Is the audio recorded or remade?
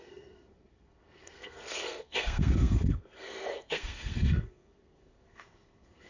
remade